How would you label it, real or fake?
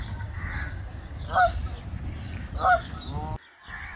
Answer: real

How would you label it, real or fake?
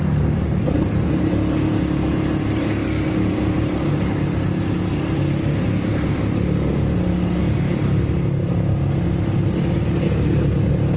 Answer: real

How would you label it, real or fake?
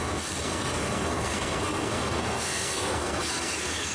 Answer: fake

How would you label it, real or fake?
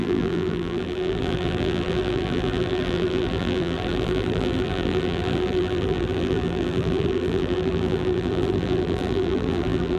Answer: fake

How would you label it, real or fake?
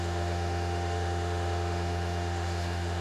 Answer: fake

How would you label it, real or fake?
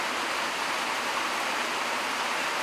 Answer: real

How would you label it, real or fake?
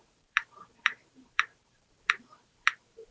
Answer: fake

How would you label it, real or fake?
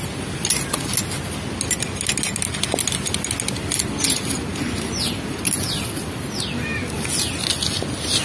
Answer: real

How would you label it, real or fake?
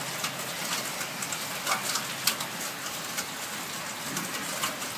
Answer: real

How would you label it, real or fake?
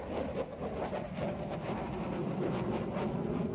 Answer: real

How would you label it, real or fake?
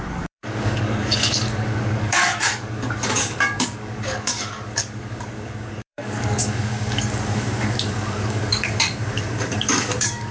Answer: fake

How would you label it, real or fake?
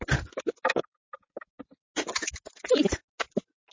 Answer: real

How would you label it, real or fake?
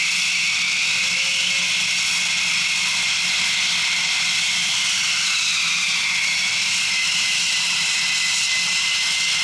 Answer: real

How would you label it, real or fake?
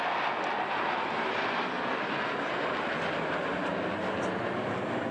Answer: real